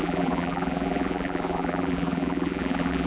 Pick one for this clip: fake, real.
fake